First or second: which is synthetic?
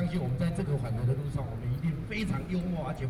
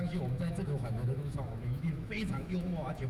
second